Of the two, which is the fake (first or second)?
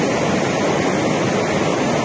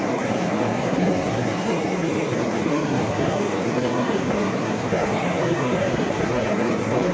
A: second